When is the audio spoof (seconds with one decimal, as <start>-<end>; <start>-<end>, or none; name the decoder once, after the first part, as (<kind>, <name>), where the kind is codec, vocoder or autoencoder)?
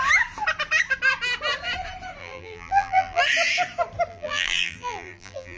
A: 2.2-3.2 (vocoder, BigVGAN v2); 4.1-5.6